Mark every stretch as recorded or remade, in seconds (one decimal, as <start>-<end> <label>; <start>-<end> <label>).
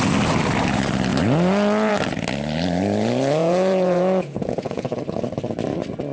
0.0-3.4 recorded; 3.4-5.0 remade; 5.0-6.1 recorded